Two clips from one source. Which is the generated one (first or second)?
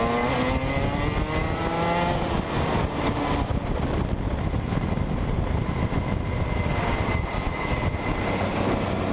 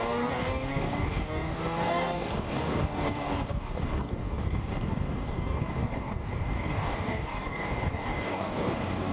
second